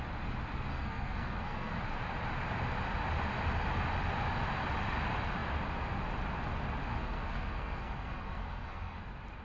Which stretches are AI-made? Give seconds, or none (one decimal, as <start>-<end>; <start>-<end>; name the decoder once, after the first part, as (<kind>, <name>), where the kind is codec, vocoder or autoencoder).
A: 0.7-1.7 (codec, SNAC); 6.9-9.0